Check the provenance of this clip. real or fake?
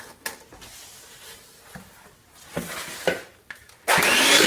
real